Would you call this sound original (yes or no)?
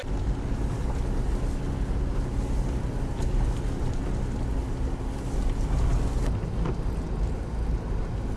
yes